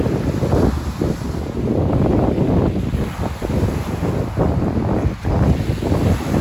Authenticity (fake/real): real